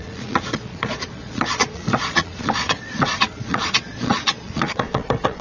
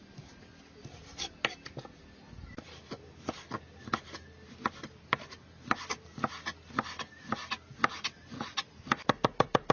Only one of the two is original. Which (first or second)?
second